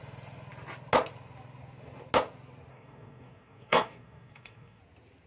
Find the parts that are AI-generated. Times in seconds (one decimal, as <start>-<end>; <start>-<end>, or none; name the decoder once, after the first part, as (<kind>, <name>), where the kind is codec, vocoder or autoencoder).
2.7-4.8 (codec, DAC)